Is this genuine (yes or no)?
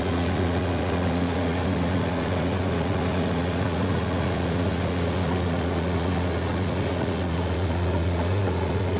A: no